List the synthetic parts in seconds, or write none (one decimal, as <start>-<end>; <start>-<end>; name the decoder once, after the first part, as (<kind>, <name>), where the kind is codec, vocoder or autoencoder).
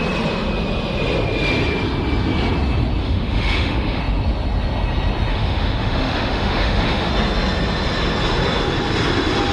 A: 3.0-4.0 (autoencoder, DAC-VAE); 5.3-7.1